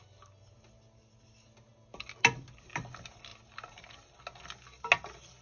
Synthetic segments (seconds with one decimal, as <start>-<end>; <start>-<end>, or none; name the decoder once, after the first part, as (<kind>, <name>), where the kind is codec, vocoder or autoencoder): none